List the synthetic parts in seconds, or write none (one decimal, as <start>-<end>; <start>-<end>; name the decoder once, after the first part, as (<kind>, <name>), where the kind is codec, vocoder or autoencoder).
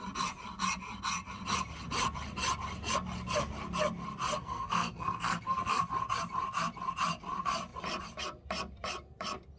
4.4-5.8 (codec, SNAC)